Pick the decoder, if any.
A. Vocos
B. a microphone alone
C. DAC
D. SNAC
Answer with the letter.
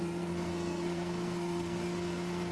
D